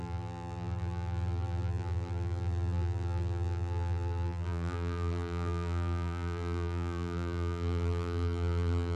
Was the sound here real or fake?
fake